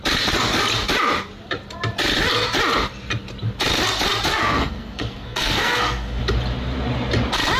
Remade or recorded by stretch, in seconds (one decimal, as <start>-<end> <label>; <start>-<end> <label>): 0.0-4.3 recorded; 4.3-6.2 remade; 6.2-7.6 recorded